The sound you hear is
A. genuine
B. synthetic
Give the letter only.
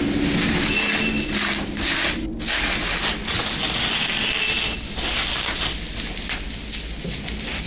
A